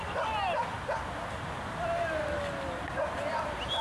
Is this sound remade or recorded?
recorded